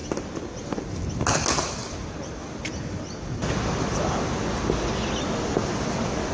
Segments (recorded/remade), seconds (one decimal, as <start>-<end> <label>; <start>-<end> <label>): 0.0-6.3 recorded